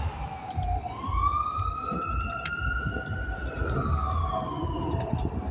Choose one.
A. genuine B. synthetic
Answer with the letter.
A